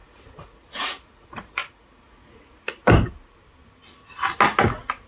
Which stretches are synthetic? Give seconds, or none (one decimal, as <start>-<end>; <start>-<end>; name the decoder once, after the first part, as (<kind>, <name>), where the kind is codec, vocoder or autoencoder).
0.0-2.8 (vocoder, Vocos)